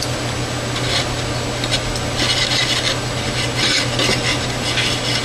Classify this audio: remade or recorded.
recorded